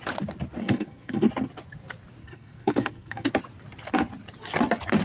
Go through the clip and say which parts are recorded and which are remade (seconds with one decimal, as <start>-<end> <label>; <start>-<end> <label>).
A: 0.0-0.6 recorded; 0.6-1.3 remade; 1.3-2.2 recorded; 2.2-3.3 remade; 3.3-5.0 recorded